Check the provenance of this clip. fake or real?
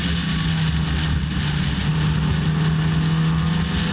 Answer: real